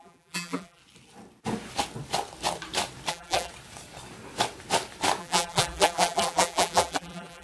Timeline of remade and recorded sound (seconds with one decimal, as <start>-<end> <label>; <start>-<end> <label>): 0.0-0.8 remade; 0.8-3.1 recorded; 3.1-3.5 remade; 3.5-5.2 recorded; 5.2-7.4 remade